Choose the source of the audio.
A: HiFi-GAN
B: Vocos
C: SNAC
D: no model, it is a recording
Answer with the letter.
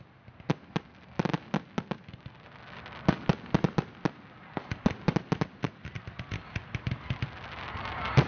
D